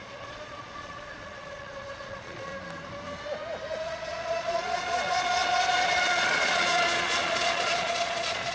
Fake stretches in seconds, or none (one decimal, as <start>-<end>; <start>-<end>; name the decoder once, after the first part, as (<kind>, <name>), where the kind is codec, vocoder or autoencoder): 0.0-2.5 (vocoder, Vocos); 3.8-8.5